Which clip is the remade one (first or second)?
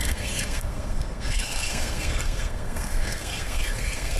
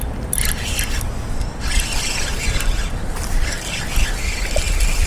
first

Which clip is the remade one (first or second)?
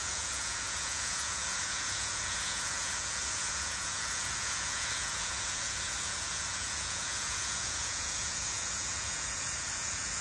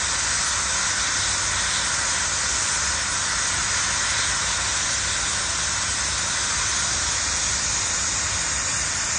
first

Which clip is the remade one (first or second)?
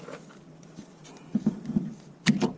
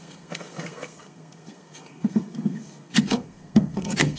second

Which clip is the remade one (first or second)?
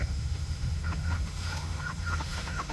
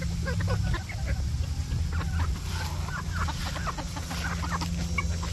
first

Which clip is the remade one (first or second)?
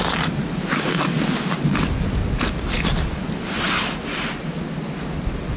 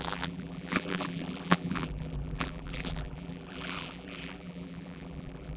second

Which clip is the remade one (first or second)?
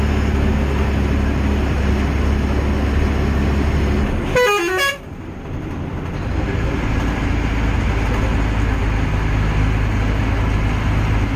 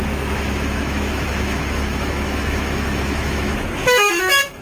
second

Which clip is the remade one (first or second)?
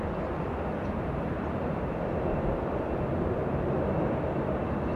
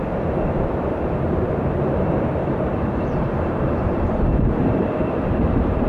second